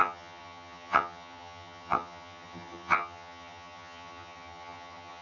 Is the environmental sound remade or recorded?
remade